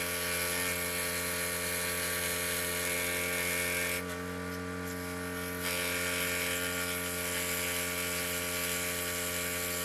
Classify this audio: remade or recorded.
recorded